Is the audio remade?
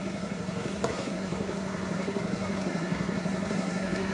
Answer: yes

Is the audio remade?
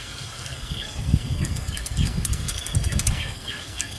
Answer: yes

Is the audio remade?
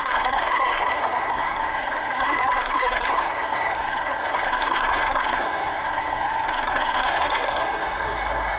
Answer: yes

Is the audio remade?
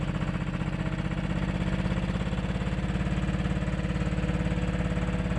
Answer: no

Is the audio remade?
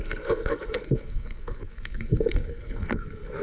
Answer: yes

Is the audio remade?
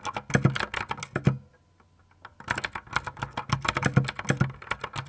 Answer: no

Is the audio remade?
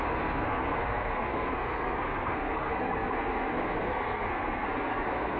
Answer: yes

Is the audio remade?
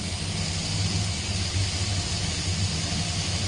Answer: no